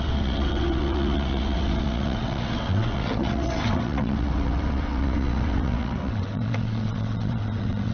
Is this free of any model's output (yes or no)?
no